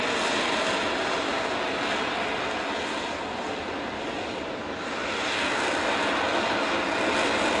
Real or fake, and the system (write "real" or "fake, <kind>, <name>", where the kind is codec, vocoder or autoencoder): real